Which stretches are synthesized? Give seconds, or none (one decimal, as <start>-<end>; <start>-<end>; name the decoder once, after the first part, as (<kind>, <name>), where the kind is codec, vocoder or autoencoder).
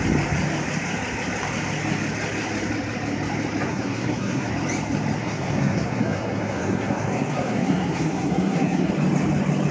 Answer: 3.7-4.5 (codec, SNAC); 5.2-8.9